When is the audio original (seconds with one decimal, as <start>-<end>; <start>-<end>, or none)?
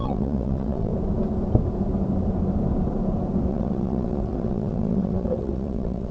0.9-3.5